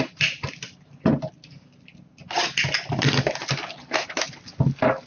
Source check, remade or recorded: recorded